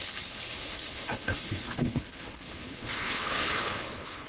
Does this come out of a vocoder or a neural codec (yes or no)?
yes